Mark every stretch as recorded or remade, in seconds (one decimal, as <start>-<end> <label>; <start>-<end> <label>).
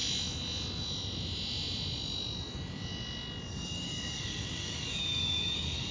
0.0-3.5 recorded; 3.5-5.9 remade